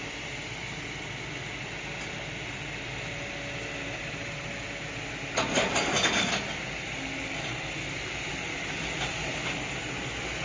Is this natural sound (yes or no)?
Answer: yes